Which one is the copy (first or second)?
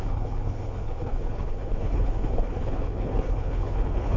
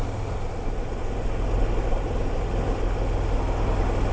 first